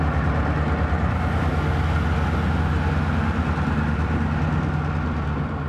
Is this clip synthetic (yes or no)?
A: no